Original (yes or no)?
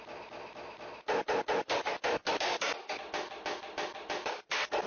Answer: yes